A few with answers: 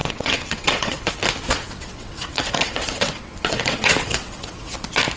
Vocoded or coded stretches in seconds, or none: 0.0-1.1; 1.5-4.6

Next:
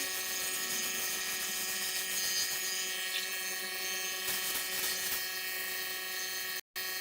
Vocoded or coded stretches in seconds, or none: none

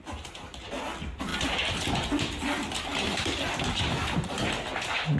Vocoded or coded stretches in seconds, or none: none

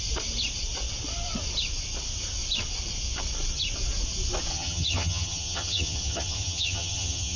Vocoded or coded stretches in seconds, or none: 4.5-7.4

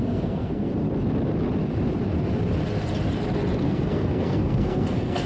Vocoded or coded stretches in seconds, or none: 0.0-0.7; 3.6-5.3